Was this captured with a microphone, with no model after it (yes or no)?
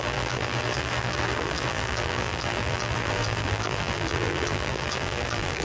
no